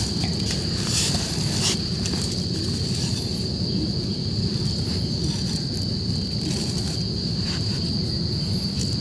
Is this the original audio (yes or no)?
yes